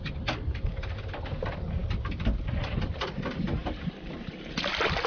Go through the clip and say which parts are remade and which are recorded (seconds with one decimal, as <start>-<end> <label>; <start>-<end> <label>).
0.0-3.6 recorded; 3.6-4.1 remade; 4.1-5.1 recorded